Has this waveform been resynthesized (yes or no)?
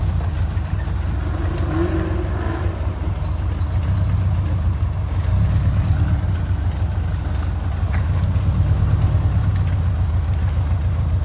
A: no